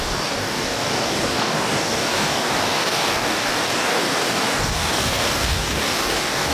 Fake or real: fake